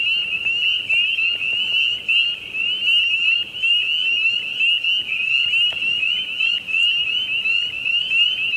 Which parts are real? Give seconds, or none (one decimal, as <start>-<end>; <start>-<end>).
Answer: 0.0-8.6